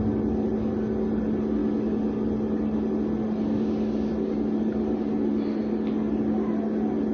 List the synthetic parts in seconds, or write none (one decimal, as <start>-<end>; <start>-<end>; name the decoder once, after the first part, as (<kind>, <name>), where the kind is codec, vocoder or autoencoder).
none